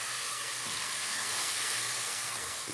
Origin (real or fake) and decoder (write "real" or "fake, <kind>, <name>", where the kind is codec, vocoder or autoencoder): fake, codec, SNAC